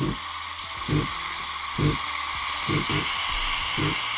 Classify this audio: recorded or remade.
recorded